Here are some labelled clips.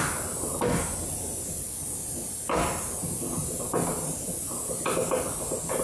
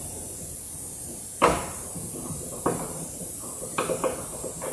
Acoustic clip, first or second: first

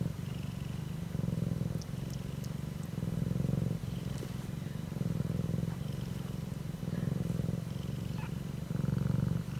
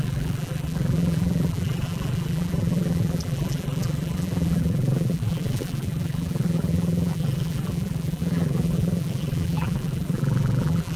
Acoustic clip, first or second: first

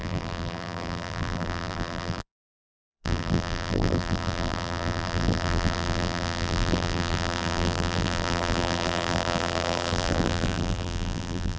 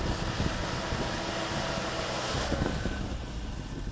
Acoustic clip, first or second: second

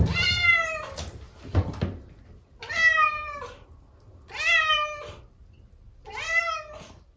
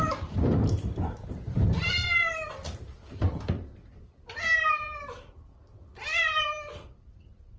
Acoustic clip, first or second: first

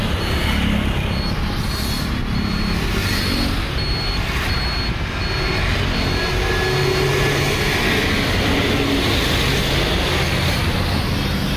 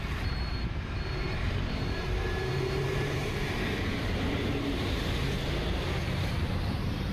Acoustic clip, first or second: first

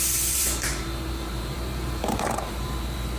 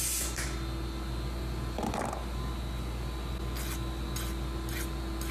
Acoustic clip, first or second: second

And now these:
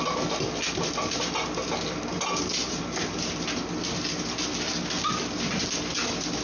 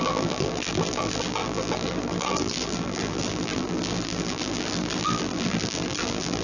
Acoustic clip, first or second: first